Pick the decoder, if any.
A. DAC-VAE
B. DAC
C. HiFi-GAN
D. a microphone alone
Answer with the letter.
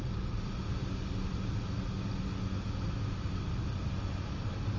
D